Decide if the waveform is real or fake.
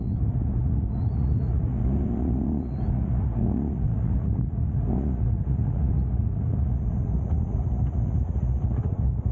fake